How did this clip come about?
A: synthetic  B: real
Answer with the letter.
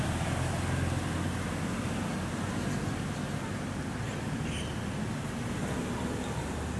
B